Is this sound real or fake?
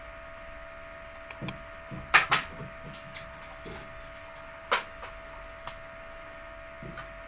real